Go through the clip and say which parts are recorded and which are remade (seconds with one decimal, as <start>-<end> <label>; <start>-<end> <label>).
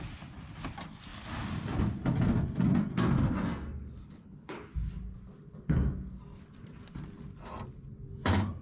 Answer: 0.0-4.0 recorded; 4.0-4.7 remade; 4.7-8.6 recorded